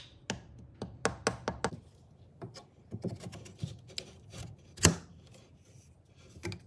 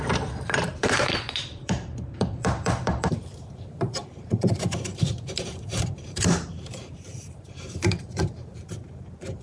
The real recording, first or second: first